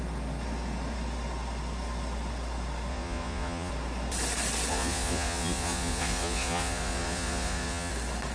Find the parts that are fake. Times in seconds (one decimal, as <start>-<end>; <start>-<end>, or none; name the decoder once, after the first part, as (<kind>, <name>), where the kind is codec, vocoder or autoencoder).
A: 2.9-3.7 (vocoder, Vocos); 4.7-7.9